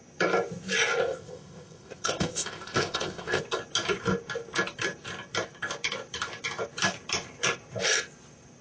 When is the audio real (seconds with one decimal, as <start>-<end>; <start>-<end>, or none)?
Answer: 0.0-1.0; 3.4-8.6